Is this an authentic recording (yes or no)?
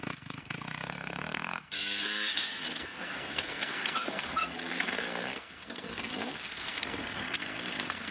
no